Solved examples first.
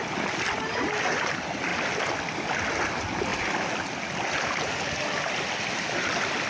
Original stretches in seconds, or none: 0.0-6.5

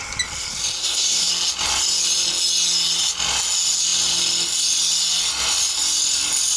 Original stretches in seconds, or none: 0.0-0.8; 1.3-6.6

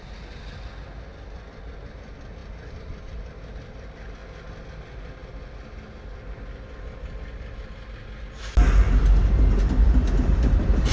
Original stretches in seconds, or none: 0.0-10.9

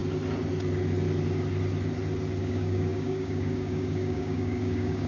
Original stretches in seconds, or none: 0.0-2.4

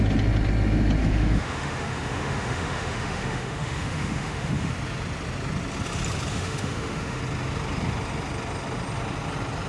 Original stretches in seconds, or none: 0.0-1.0; 4.7-6.3; 7.2-9.7